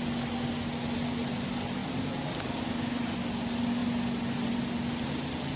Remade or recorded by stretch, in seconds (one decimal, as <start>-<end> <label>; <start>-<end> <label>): 0.0-5.6 recorded